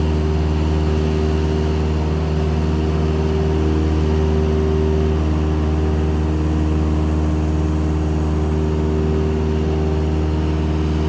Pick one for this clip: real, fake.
real